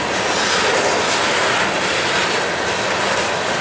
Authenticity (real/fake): real